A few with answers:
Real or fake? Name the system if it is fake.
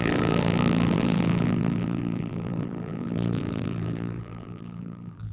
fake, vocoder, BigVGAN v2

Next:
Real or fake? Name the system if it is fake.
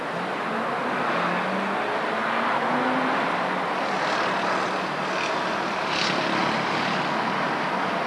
real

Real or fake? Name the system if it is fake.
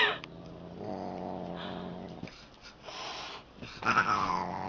real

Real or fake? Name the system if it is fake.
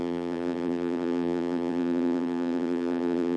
fake, vocoder, BigVGAN v2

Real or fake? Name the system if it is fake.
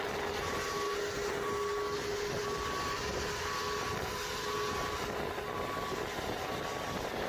real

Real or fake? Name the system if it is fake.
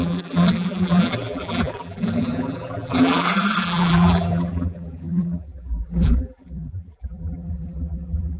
fake, vocoder, BigVGAN v2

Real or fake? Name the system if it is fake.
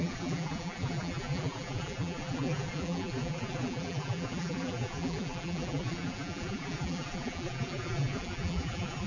fake, vocoder, BigVGAN v2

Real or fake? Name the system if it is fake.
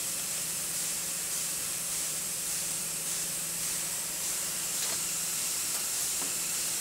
fake, vocoder, BigVGAN v2